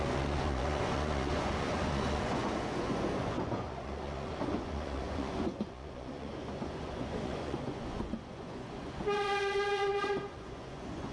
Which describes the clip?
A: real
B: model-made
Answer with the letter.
B